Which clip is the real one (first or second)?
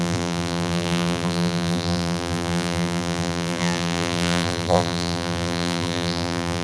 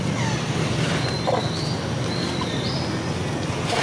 second